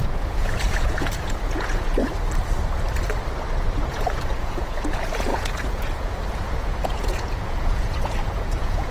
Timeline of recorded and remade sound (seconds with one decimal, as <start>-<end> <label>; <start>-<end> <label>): 0.0-2.0 remade; 2.0-3.9 recorded; 3.9-8.9 remade